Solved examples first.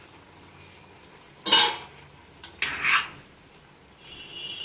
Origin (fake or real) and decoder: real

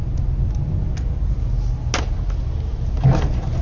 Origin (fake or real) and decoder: real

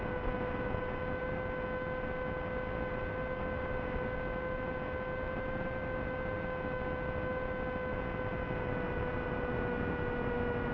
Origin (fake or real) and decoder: real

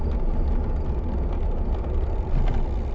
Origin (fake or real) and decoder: real